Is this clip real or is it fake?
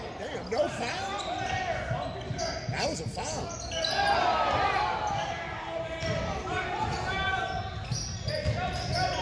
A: real